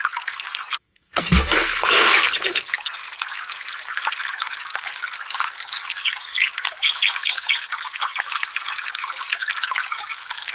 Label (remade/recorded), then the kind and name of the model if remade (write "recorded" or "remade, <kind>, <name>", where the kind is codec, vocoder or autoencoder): remade, codec, SNAC